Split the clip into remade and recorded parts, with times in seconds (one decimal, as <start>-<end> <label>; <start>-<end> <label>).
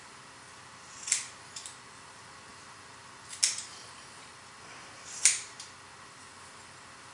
0.0-7.1 recorded